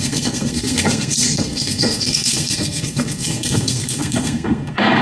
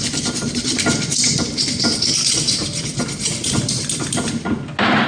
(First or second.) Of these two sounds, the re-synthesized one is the first